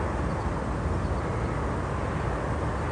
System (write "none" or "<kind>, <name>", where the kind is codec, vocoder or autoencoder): none